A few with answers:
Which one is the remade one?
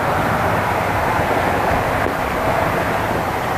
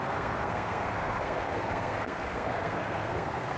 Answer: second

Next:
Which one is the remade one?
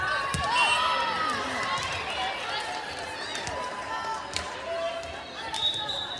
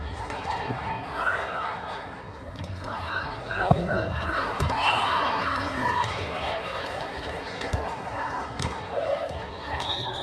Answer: second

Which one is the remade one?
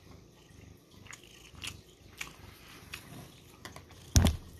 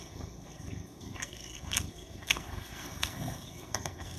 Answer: second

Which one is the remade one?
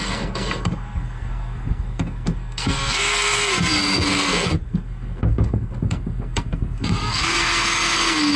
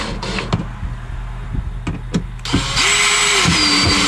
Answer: first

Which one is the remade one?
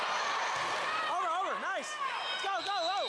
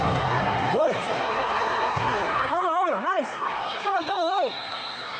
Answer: second